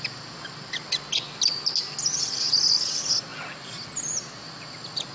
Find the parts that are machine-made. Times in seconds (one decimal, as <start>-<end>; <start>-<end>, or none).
none